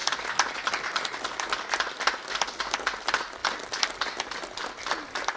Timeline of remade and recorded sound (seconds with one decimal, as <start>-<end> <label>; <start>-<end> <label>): 0.0-5.4 recorded